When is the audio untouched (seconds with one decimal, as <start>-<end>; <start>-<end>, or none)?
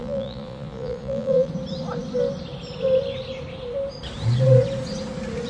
1.5-5.5